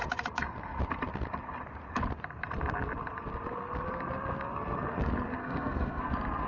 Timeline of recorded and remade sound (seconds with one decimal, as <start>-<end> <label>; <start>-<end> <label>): 0.0-5.4 recorded; 5.4-6.0 remade; 6.0-6.5 recorded